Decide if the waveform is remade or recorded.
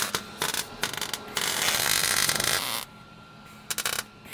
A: recorded